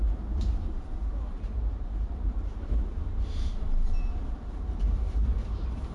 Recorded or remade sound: remade